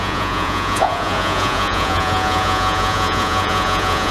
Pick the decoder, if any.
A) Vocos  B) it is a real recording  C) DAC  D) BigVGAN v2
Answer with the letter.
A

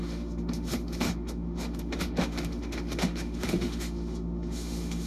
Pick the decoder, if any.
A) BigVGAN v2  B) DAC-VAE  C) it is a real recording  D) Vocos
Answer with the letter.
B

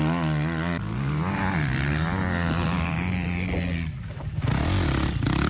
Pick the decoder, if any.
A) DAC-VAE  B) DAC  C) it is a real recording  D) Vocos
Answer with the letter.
C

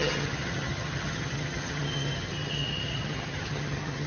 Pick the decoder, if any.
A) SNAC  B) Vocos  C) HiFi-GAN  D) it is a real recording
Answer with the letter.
C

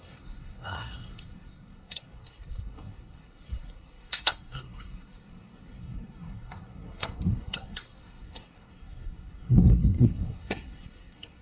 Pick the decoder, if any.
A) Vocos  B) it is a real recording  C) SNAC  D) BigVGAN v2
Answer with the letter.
C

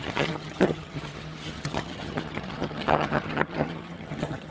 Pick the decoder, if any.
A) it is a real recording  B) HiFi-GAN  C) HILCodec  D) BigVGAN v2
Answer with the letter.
B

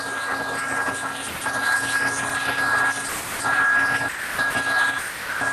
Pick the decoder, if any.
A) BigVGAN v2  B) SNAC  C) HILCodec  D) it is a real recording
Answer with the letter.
D